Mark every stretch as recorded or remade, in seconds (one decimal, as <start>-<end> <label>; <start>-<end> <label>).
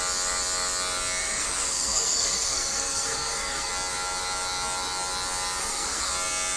0.0-1.2 recorded; 1.2-3.7 remade; 3.7-5.6 recorded; 5.6-6.1 remade; 6.1-6.6 recorded